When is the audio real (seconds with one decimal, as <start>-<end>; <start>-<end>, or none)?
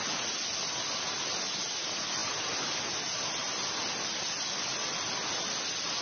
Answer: 0.0-6.0